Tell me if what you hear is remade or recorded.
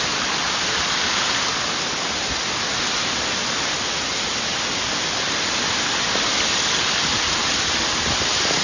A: recorded